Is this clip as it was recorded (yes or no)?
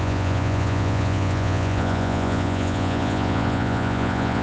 no